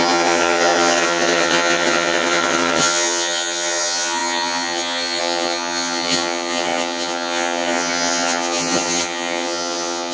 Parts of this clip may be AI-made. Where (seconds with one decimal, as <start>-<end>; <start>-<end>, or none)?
0.0-10.1